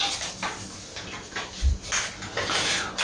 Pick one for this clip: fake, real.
real